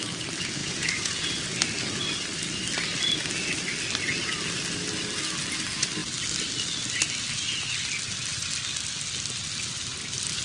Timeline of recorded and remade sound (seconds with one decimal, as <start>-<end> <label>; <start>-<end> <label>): 0.0-0.6 recorded; 0.6-1.2 remade; 1.2-10.4 recorded